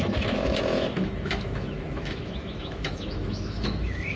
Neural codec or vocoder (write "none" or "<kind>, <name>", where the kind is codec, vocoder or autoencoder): autoencoder, DAC-VAE